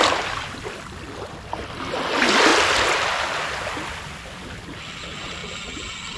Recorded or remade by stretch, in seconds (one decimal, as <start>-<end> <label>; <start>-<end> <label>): 0.0-5.4 recorded; 5.4-6.2 remade